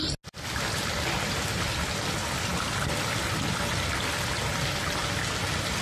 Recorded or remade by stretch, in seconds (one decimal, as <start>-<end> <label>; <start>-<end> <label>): 0.0-5.8 recorded